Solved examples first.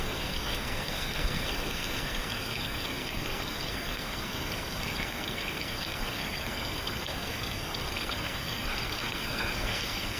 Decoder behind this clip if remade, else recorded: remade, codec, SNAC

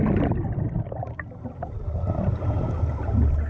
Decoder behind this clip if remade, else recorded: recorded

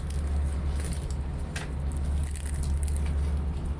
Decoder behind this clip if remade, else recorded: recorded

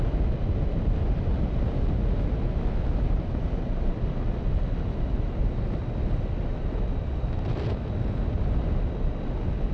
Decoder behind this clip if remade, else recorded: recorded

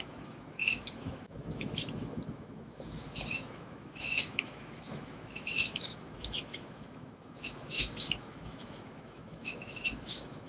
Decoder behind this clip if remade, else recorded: remade, autoencoder, DAC-VAE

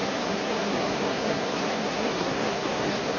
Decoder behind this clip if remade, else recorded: remade, codec, SNAC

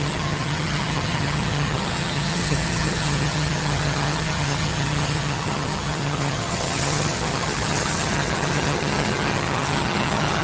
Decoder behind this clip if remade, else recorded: remade, vocoder, HiFi-GAN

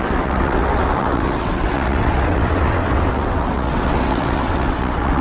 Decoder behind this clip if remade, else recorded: remade, vocoder, WaveNeXt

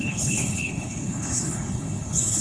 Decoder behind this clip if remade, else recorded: remade, codec, HILCodec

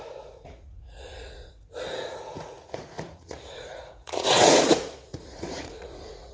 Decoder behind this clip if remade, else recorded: remade, vocoder, Vocos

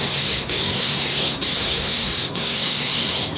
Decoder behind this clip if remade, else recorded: remade, codec, SNAC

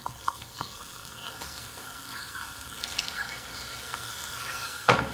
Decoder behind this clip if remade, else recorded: remade, codec, SNAC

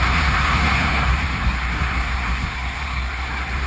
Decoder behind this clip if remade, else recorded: remade, codec, SNAC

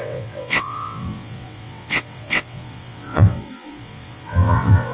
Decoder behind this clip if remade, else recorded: remade, vocoder, WaveNeXt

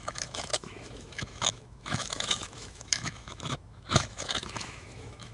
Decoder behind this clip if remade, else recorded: remade, autoencoder, DAC-VAE